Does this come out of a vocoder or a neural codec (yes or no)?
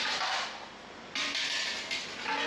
no